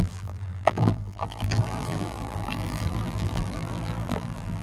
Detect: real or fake fake